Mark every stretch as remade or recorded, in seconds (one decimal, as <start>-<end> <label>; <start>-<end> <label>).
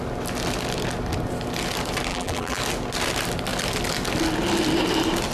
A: 0.0-2.1 recorded; 2.1-2.6 remade; 2.6-5.3 recorded